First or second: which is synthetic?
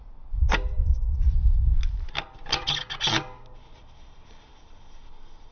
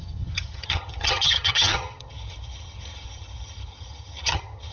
second